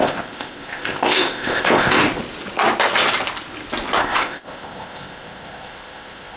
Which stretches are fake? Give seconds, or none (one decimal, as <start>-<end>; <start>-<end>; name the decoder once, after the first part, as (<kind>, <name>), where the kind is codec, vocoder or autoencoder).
0.0-2.0 (codec, ZipCodec); 4.0-6.4